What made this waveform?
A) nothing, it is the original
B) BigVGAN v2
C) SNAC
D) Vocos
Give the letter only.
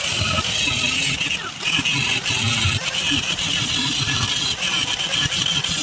B